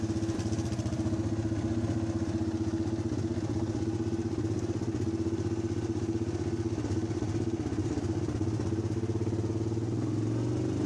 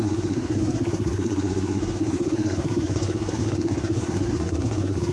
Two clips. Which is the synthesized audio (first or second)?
second